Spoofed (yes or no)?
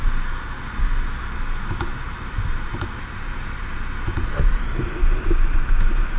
no